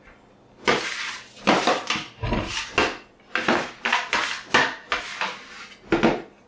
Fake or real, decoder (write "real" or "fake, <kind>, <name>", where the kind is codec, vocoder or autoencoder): real